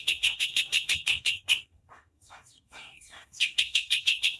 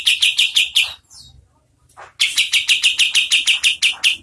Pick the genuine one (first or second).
second